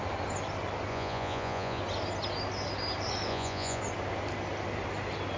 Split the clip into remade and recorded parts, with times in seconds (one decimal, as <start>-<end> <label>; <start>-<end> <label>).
0.0-0.9 recorded; 0.9-1.8 remade; 1.8-3.3 recorded; 3.3-3.8 remade; 3.8-5.4 recorded